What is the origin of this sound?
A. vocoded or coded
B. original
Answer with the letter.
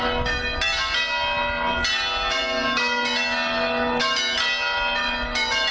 B